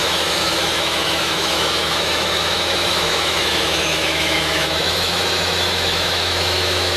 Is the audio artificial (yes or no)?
yes